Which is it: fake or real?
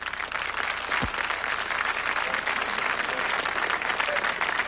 real